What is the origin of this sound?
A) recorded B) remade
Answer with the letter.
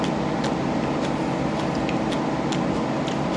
A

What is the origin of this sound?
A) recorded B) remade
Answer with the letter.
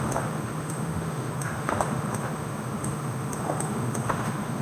B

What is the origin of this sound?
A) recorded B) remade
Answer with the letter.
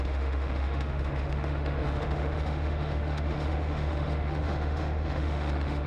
B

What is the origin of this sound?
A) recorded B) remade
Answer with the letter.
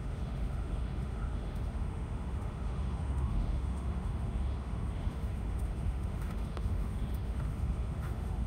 B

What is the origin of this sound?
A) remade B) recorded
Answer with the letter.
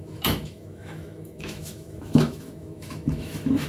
A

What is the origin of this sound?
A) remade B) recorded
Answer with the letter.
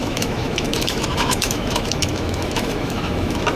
A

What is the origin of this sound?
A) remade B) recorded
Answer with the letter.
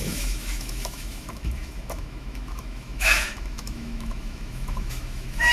A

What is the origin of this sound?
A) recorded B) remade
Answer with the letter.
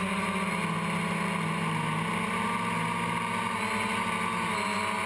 A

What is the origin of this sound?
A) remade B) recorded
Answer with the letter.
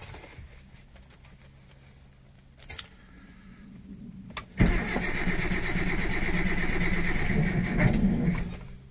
B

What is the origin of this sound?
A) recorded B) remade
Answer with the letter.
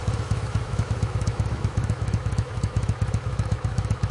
B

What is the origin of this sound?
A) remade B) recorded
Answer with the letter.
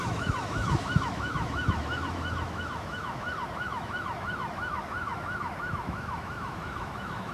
A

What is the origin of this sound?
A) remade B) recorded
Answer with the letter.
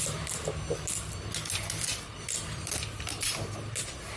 B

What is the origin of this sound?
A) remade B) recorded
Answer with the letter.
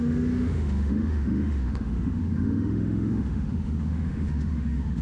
A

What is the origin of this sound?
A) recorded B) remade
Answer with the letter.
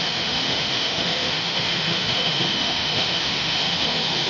B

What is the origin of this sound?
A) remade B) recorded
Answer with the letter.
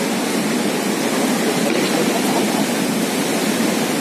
B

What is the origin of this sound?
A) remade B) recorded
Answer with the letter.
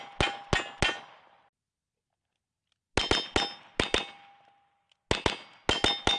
B